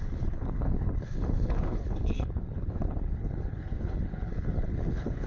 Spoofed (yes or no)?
yes